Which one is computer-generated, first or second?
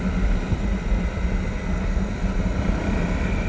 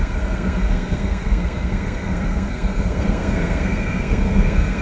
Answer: second